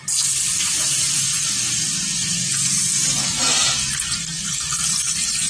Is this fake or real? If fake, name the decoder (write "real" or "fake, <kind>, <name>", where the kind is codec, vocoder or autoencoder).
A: real